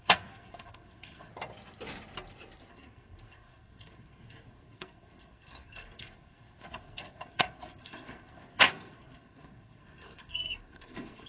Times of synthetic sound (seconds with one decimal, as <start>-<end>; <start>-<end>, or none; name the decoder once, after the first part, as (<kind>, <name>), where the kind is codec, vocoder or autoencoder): 0.0-1.3 (codec, SNAC); 2.7-11.3